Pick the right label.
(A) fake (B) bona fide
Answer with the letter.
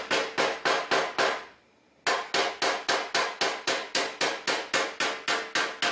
B